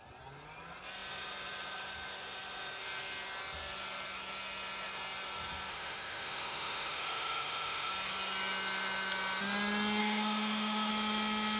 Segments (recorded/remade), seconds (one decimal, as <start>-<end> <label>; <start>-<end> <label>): 0.0-5.7 recorded; 5.7-7.9 remade; 7.9-10.0 recorded; 10.0-10.9 remade; 10.9-11.6 recorded